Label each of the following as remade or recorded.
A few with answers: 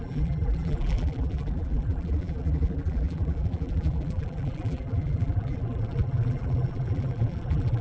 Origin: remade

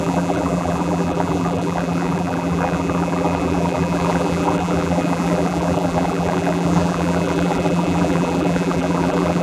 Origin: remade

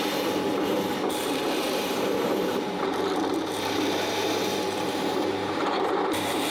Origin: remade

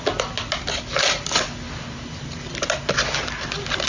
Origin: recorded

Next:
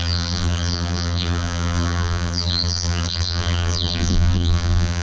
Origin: remade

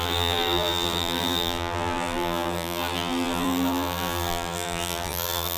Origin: remade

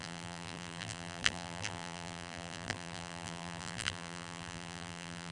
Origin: remade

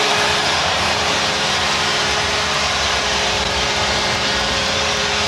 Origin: remade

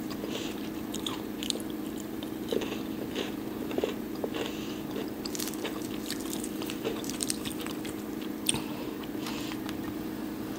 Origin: remade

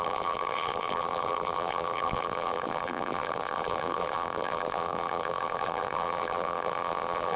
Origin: remade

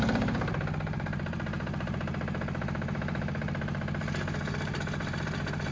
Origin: remade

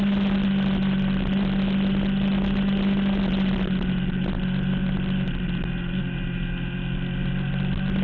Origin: recorded